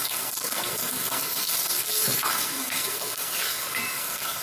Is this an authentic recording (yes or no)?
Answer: no